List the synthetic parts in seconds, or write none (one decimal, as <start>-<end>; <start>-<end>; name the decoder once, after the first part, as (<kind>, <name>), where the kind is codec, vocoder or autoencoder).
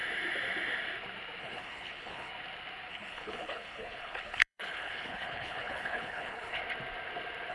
1.4-2.3 (codec, HILCodec); 2.9-6.6